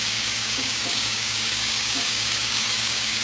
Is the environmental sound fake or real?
fake